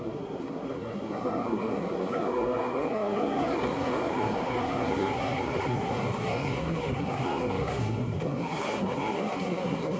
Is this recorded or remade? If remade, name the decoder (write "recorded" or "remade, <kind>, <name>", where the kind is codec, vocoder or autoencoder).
remade, codec, SNAC